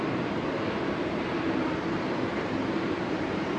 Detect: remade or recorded remade